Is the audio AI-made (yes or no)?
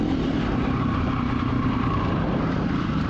yes